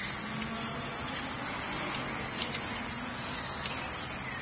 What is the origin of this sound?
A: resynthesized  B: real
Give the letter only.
B